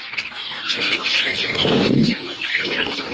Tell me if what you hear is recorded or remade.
remade